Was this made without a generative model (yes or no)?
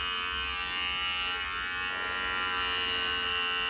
yes